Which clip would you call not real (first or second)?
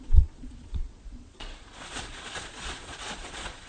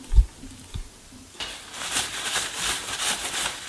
first